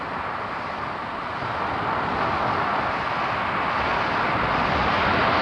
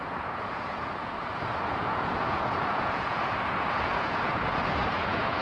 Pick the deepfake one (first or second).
second